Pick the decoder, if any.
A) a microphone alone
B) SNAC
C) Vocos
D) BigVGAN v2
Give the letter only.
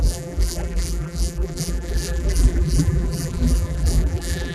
D